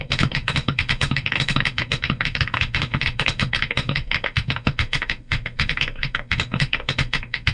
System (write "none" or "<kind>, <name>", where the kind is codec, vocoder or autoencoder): autoencoder, DAC-VAE